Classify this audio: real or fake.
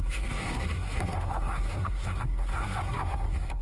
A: fake